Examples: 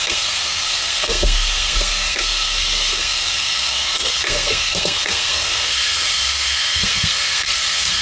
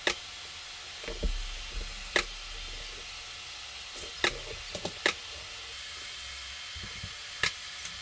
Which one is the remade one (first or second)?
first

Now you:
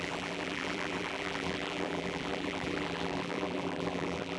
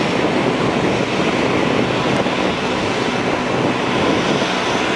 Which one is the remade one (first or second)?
first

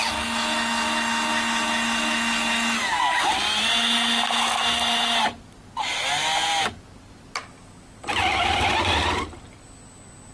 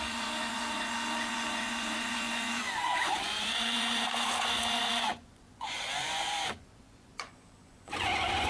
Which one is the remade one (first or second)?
second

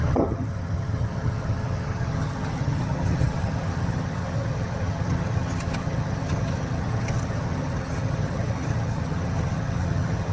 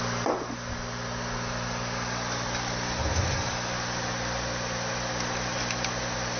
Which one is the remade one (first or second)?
first